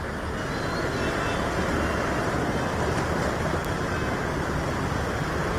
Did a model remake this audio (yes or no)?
no